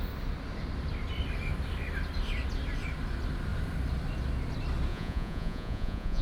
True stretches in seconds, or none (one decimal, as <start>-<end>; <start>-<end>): 0.0-4.9